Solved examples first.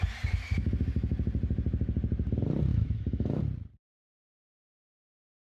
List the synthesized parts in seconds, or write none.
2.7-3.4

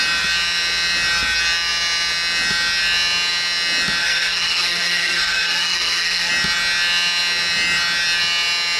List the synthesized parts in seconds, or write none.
4.0-6.3

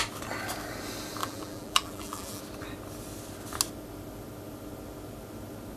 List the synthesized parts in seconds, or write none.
1.2-2.4

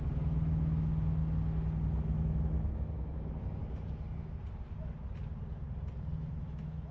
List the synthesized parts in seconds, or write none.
0.0-1.2; 2.0-3.6; 6.3-6.9